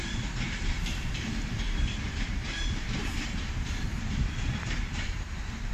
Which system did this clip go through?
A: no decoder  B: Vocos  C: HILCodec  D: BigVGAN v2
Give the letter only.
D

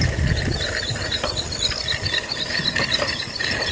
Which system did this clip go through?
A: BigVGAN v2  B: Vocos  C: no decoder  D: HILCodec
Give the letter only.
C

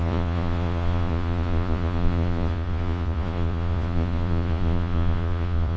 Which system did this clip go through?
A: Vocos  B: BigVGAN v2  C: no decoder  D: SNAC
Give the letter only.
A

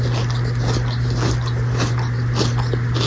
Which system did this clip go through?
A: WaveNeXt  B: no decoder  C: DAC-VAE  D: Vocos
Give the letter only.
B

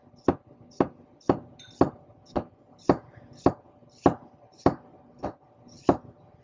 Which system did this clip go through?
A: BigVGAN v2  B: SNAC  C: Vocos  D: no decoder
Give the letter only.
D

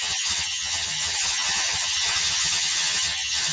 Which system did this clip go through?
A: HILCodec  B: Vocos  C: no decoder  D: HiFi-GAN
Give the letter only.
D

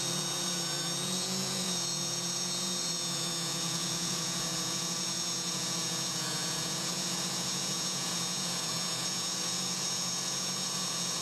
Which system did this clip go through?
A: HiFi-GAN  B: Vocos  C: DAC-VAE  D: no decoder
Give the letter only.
B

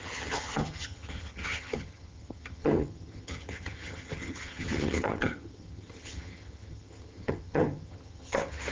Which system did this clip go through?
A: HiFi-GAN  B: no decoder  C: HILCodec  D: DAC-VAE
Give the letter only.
A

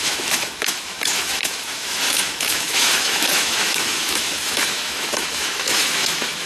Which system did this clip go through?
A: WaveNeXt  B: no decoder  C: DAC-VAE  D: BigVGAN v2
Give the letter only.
C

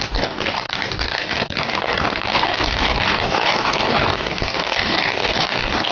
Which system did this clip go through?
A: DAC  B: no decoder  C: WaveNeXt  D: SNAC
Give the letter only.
A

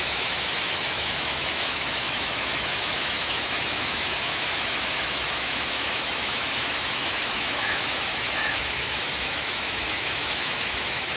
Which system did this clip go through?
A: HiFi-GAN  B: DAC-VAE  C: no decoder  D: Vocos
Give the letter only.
B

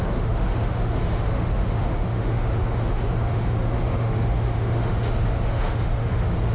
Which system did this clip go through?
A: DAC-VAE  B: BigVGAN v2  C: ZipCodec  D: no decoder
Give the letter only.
A